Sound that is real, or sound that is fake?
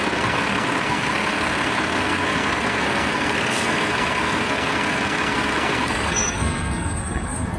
fake